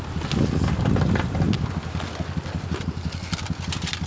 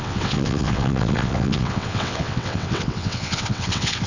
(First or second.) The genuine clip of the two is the first